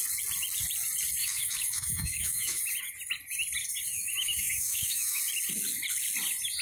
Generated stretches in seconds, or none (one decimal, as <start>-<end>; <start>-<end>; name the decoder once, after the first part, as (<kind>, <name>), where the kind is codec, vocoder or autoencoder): 1.2-2.6 (autoencoder, DAC-VAE); 3.9-5.2